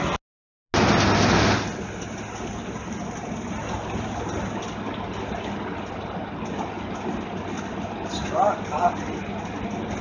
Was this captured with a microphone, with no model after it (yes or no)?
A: yes